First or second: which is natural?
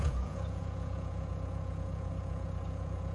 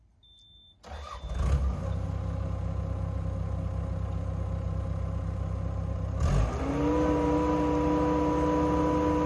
second